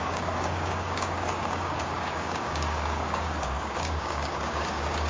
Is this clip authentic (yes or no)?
no